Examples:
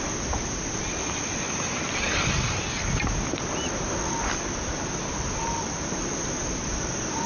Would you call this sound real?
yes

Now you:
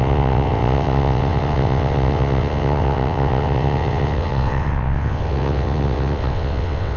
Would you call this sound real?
no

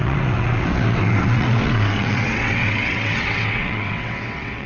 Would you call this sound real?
no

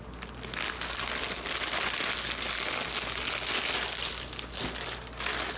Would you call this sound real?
yes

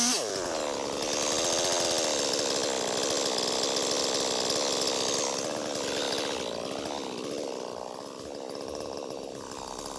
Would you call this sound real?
yes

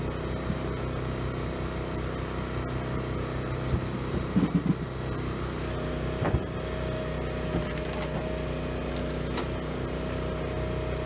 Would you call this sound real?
yes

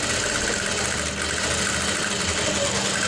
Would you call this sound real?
yes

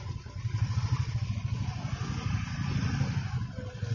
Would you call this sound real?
yes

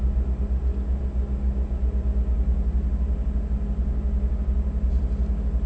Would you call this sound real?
yes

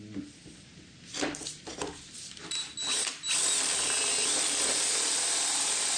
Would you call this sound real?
yes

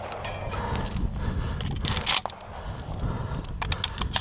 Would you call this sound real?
yes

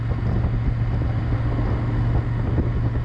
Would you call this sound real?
yes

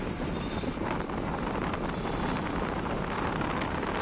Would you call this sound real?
yes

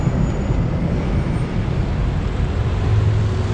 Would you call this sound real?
yes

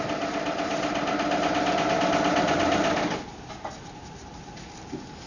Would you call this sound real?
yes